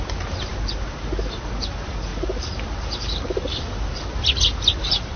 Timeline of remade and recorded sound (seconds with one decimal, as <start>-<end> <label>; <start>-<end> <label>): 0.0-2.1 recorded; 2.1-5.2 remade